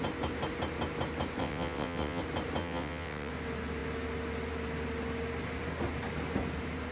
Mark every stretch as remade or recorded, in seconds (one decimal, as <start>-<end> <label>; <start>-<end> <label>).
0.0-1.4 recorded; 1.4-2.2 remade; 2.2-2.6 recorded; 2.6-3.3 remade; 3.3-6.9 recorded

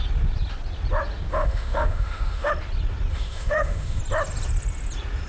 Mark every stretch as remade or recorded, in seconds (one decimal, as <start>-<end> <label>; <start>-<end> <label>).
0.0-1.3 recorded; 1.3-2.5 remade; 2.5-3.1 recorded; 3.1-4.0 remade; 4.0-5.3 recorded

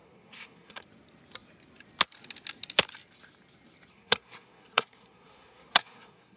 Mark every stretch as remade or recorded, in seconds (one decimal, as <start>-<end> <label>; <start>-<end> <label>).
0.0-0.8 remade; 0.8-3.9 recorded; 3.9-6.4 remade

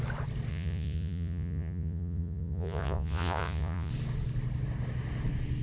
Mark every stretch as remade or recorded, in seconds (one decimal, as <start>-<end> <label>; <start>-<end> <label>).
0.0-0.5 recorded; 0.5-3.9 remade; 3.9-5.6 recorded

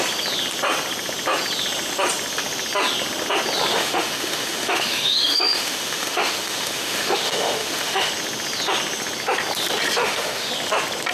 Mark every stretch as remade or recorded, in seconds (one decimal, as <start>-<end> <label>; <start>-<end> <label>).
0.0-3.7 recorded; 3.7-8.1 remade; 8.1-10.0 recorded; 10.0-10.5 remade; 10.5-11.1 recorded

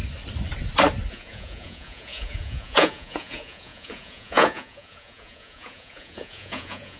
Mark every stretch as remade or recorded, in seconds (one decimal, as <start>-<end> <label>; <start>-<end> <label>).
0.0-1.1 recorded; 1.1-7.0 remade